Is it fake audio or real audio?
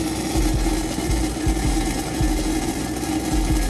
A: real